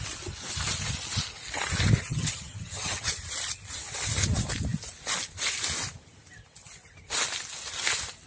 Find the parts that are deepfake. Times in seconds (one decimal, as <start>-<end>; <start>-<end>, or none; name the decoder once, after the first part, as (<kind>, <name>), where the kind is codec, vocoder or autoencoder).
2.1-3.1 (vocoder, HiFi-GAN)